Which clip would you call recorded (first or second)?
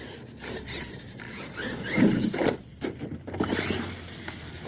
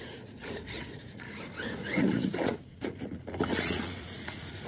first